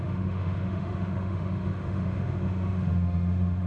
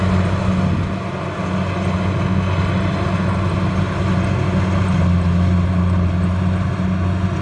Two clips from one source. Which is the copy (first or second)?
first